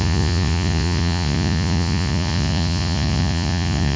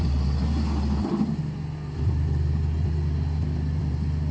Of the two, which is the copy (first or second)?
first